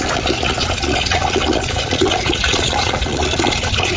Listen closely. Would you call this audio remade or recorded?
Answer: remade